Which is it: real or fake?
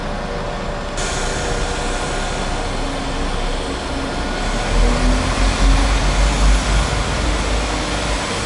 real